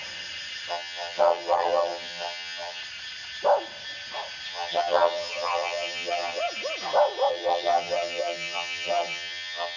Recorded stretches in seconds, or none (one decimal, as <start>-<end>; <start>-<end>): 0.0-0.7; 2.8-4.5; 6.4-7.3